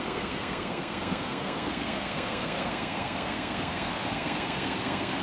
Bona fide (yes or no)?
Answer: no